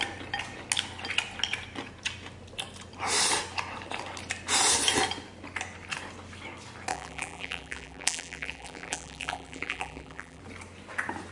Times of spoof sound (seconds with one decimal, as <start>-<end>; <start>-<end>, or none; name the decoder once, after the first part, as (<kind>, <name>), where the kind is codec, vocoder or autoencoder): 6.9-10.4 (vocoder, BigVGAN v2)